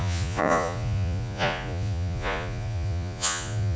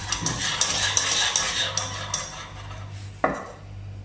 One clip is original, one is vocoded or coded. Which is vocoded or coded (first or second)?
first